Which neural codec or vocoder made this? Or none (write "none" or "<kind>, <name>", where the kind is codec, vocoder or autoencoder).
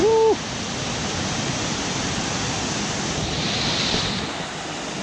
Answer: none